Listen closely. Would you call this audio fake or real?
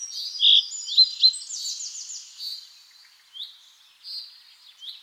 real